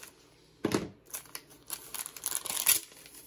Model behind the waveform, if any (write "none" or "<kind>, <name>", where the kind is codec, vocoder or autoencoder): none